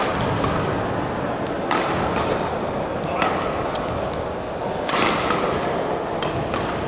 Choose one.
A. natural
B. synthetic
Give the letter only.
A